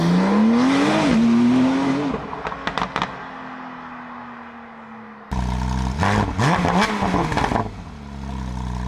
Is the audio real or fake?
real